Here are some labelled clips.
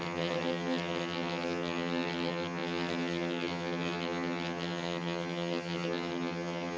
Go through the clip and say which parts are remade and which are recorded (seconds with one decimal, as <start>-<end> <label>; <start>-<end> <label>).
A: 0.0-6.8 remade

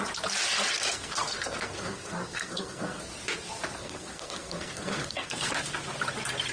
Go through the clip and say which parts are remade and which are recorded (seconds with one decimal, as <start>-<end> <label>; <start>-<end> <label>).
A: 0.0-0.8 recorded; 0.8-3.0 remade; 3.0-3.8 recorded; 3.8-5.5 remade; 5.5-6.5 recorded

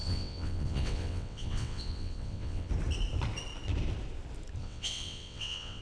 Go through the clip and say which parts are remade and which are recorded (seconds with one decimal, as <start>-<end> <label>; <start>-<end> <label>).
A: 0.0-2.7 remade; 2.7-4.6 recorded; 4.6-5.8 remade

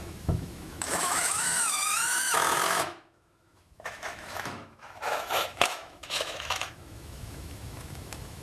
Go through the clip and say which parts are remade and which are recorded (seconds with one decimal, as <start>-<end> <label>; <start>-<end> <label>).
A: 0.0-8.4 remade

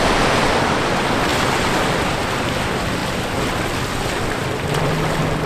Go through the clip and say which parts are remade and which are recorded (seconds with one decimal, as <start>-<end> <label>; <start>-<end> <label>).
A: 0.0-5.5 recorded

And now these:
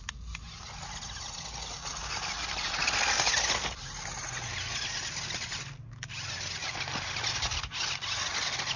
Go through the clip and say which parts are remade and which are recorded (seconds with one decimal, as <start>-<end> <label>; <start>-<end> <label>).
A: 0.0-8.8 recorded

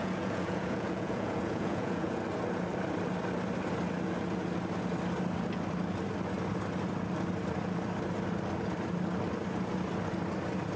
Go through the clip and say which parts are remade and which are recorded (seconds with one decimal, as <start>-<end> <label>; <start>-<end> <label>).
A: 0.0-2.2 remade; 2.2-10.8 recorded

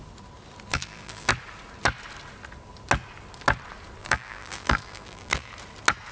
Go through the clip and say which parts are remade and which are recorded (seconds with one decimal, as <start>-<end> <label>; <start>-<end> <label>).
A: 0.0-0.7 recorded; 0.7-1.3 remade; 1.3-4.0 recorded; 4.0-5.5 remade; 5.5-6.1 recorded